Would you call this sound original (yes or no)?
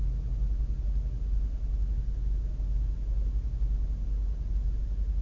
yes